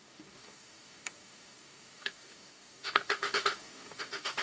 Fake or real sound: fake